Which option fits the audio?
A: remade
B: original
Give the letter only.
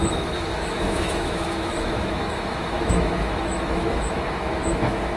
A